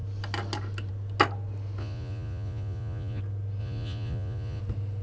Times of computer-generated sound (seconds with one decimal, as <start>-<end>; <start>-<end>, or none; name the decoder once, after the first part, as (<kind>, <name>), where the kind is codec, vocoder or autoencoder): 1.8-3.2 (vocoder, Vocos); 3.6-4.6